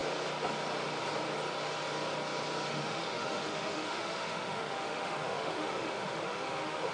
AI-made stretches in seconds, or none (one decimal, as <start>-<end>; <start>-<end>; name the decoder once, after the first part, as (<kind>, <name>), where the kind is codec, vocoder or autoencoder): 2.7-6.9 (autoencoder, DAC-VAE)